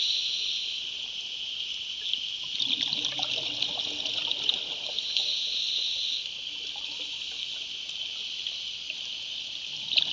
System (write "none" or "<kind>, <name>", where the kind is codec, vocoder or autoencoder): none